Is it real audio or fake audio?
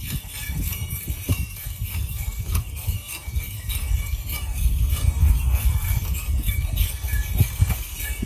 fake